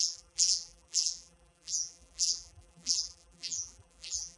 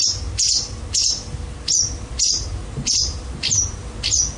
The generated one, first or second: first